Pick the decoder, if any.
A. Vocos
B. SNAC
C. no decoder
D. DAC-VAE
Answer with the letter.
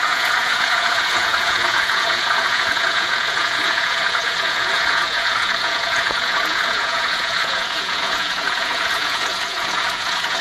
A